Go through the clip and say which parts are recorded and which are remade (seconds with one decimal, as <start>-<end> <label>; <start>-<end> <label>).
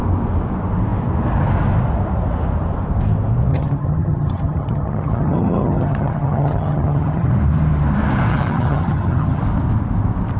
0.0-3.5 recorded; 3.5-7.3 remade; 7.3-8.3 recorded; 8.3-9.4 remade; 9.4-10.4 recorded